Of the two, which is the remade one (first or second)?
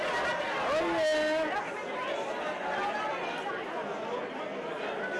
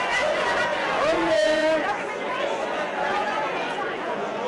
second